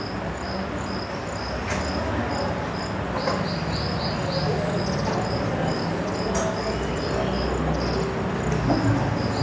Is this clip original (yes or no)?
yes